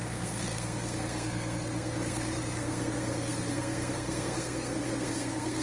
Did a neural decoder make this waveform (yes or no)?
yes